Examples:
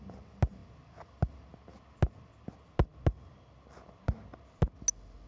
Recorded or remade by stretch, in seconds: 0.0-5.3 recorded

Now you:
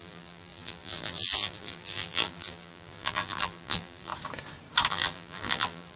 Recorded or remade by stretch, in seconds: 0.0-4.1 remade; 4.1-4.9 recorded; 4.9-6.0 remade